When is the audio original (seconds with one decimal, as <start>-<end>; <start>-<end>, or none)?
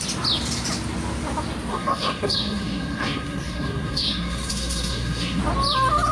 0.0-1.7; 5.4-6.1